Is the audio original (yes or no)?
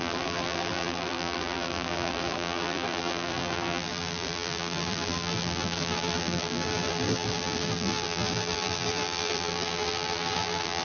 no